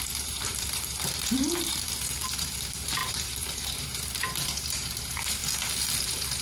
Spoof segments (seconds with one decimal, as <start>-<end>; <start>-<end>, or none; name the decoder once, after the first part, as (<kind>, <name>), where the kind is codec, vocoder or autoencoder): 0.0-5.4 (vocoder, BigVGAN v2); 6.0-6.4